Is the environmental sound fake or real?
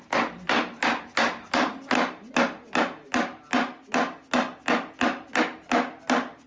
real